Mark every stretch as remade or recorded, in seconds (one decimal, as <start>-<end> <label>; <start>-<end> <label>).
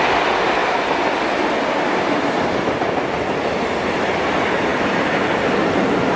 0.0-6.2 recorded